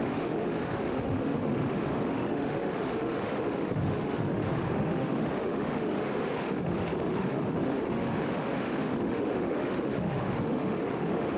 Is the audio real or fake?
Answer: fake